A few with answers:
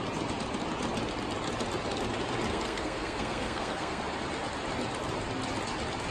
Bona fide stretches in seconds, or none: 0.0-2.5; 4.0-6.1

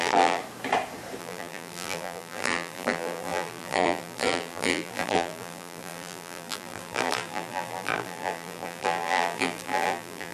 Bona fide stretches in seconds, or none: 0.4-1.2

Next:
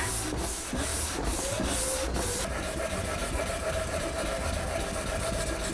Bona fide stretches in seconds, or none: 0.0-0.9; 1.4-3.2; 4.0-5.7